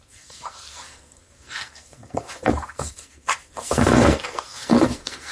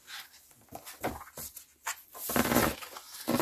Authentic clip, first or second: second